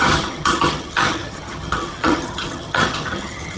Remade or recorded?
remade